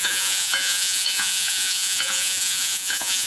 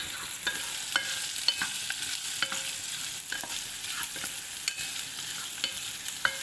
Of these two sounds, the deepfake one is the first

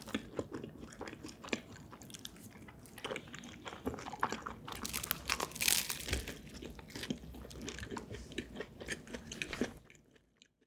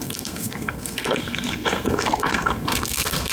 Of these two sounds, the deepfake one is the second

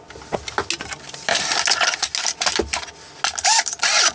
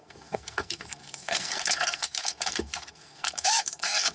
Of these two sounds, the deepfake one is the second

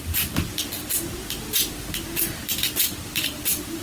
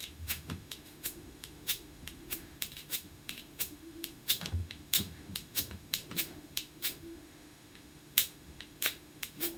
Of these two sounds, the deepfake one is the second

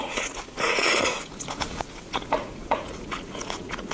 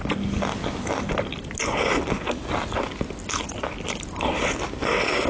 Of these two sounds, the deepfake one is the first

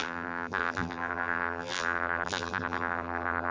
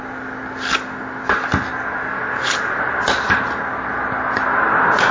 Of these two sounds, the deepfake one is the first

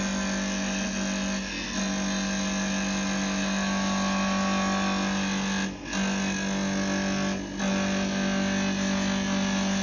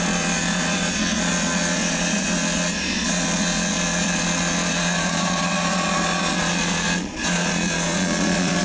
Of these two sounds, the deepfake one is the second